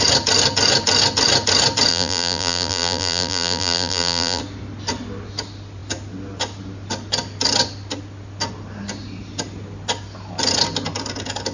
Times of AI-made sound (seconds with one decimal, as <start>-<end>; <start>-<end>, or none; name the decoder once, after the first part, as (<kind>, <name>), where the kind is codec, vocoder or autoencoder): 1.9-4.4 (vocoder, BigVGAN v2)